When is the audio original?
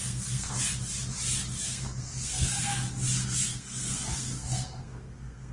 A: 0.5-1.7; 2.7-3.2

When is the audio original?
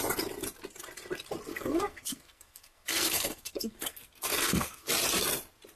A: 0.0-1.5; 4.9-5.7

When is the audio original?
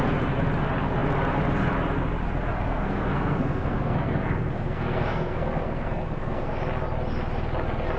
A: 0.0-2.5; 6.6-8.0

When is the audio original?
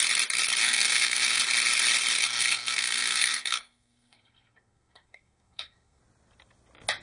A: 0.0-0.6; 1.4-2.2; 6.0-7.0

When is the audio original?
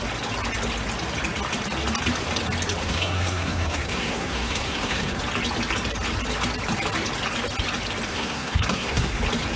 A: 0.0-2.8; 5.2-8.1; 9.2-9.6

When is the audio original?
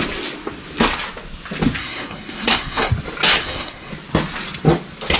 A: 0.0-1.8; 2.9-3.4; 3.9-5.2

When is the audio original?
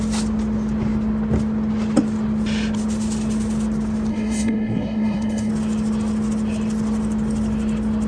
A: 0.0-4.1; 5.5-8.1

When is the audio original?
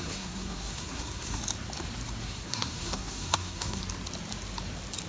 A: 1.4-2.2; 3.8-5.1